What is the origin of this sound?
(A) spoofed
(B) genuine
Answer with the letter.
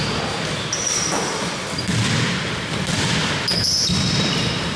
B